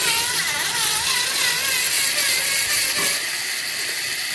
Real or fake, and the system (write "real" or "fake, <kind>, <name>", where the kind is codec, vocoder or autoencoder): real